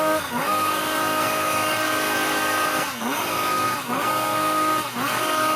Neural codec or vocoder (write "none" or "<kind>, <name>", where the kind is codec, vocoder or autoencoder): codec, SNAC